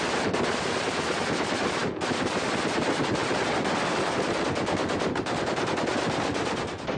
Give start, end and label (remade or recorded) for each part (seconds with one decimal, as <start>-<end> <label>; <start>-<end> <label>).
0.0-7.0 remade